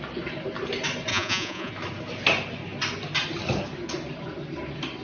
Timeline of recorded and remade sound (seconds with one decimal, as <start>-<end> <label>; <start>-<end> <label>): 0.0-1.1 recorded; 1.1-1.7 remade; 1.7-5.0 recorded